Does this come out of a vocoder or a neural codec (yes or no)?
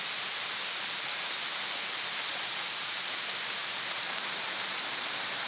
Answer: yes